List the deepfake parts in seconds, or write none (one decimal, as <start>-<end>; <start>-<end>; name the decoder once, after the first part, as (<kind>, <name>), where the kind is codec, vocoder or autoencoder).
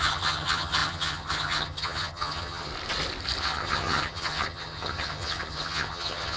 0.0-2.7 (vocoder, HiFi-GAN); 3.4-6.4